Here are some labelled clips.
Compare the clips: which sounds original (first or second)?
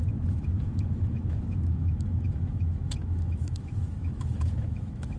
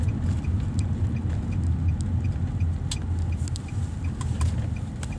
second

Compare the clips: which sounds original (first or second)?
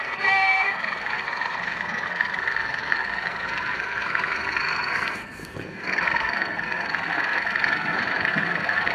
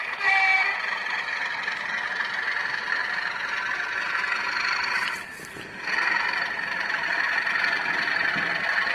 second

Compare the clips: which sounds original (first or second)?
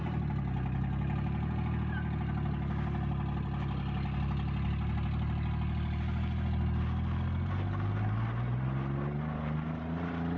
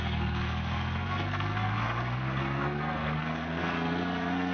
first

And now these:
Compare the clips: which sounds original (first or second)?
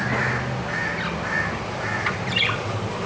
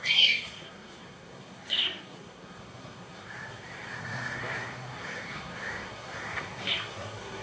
first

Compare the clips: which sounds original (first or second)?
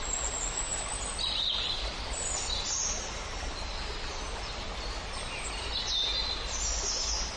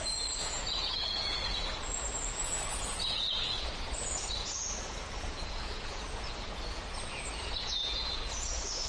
first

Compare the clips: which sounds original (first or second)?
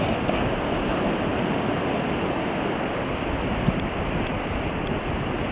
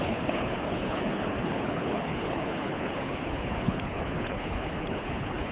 first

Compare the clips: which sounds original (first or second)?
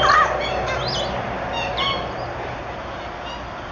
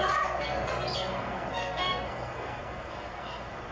first